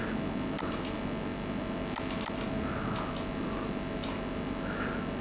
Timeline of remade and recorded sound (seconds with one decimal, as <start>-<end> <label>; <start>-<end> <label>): 0.0-5.2 recorded